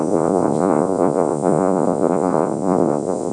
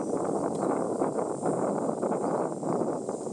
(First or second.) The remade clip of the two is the first